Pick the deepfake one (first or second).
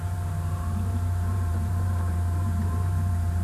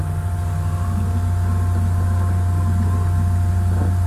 first